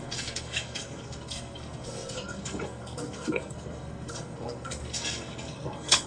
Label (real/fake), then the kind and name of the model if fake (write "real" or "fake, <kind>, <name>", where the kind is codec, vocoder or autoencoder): fake, codec, SNAC